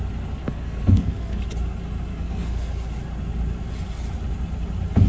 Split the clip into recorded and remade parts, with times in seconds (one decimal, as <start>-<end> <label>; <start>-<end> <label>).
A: 0.0-0.4 recorded; 0.4-1.4 remade; 1.4-2.1 recorded; 2.1-2.7 remade; 2.7-5.1 recorded